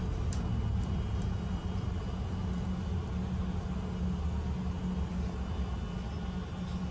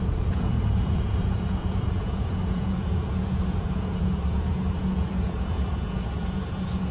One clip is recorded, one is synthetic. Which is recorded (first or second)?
first